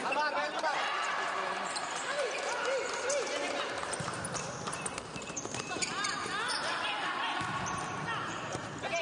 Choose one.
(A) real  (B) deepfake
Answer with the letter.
B